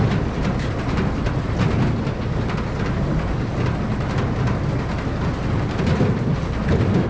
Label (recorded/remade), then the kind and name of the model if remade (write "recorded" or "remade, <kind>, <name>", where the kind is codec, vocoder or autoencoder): recorded